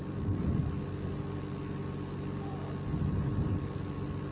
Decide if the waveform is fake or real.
real